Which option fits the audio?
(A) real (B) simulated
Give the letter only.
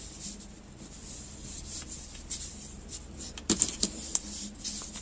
B